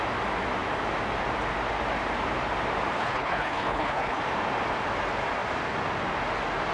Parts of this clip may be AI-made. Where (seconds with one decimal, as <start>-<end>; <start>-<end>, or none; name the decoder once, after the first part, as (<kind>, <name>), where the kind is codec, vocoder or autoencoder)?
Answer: 3.0-4.2 (codec, HILCodec)